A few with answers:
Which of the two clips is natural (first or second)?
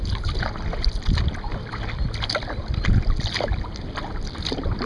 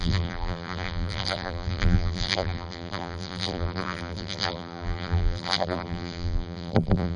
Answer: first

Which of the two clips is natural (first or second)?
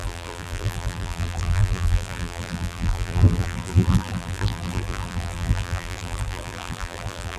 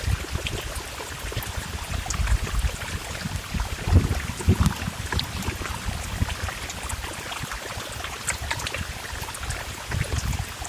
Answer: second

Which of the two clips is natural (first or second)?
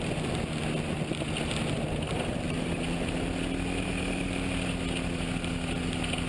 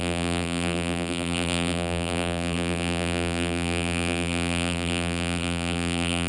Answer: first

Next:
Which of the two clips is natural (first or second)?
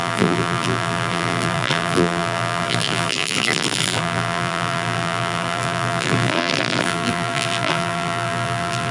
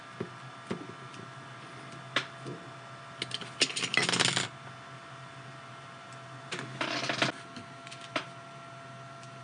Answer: second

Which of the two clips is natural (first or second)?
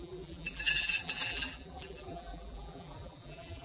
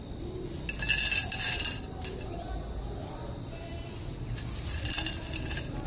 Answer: second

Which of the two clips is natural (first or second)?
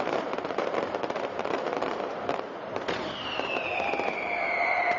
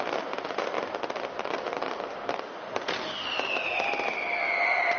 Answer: second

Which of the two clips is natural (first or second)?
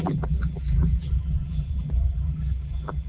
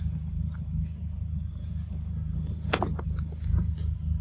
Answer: second